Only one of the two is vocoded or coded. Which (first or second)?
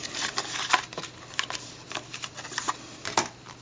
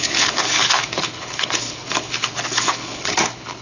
second